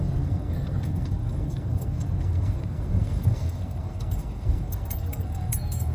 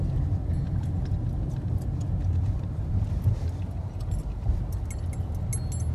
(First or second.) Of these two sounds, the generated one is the first